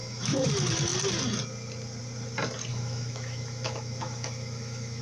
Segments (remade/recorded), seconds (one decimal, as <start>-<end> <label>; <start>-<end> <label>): 0.0-0.5 remade; 0.5-2.7 recorded; 2.7-5.0 remade